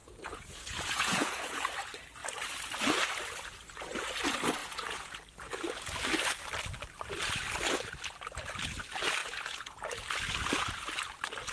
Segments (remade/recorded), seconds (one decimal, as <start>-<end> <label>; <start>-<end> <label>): 0.0-1.6 remade; 1.6-4.6 recorded; 4.6-5.2 remade; 5.2-9.2 recorded; 9.2-9.8 remade; 9.8-11.5 recorded